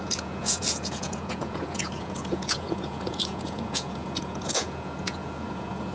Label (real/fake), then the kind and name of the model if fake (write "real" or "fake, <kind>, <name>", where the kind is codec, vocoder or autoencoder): fake, vocoder, Vocos